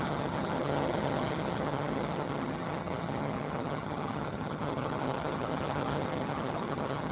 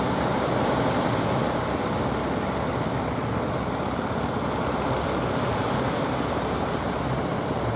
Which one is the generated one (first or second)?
first